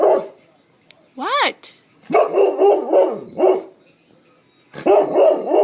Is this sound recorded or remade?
recorded